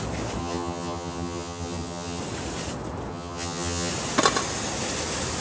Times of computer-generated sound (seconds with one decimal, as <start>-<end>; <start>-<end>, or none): 0.4-2.2; 3.1-3.9